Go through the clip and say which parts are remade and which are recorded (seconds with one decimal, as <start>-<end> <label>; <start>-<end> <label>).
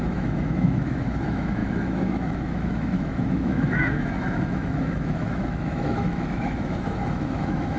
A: 0.0-7.8 remade